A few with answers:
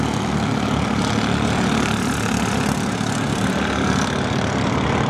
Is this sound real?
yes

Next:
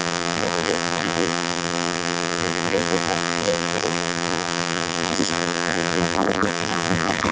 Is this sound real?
no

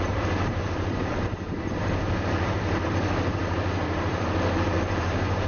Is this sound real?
no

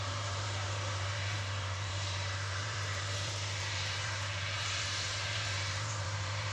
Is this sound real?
no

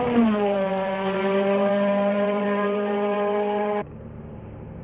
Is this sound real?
no